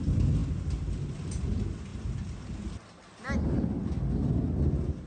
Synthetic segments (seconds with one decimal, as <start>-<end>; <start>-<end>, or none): none